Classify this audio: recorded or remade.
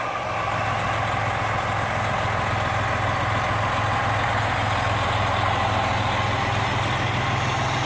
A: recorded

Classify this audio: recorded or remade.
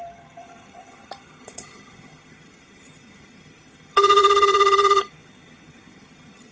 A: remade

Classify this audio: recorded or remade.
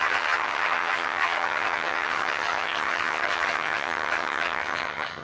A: remade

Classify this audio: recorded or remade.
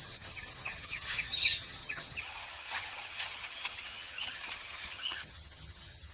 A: remade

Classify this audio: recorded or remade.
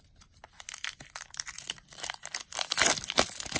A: recorded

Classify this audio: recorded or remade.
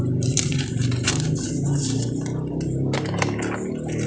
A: recorded